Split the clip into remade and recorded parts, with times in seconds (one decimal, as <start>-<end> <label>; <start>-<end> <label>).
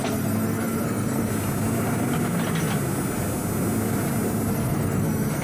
0.0-1.3 remade; 1.3-4.5 recorded; 4.5-5.4 remade